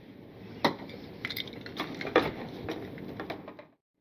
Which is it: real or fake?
real